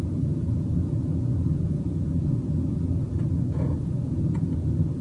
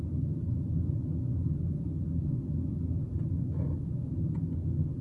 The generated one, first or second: first